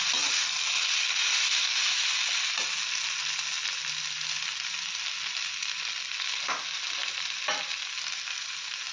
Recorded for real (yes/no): yes